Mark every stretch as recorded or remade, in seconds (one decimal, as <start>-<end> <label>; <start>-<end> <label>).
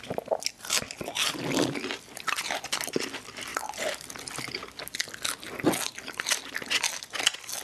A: 0.0-7.6 recorded